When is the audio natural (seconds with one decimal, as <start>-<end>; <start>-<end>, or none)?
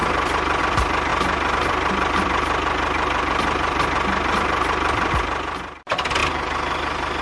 0.6-1.1; 5.1-7.2